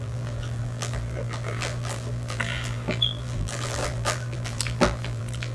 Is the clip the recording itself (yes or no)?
no